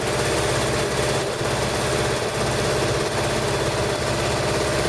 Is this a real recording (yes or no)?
yes